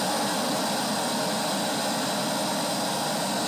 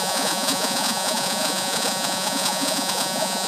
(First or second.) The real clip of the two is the first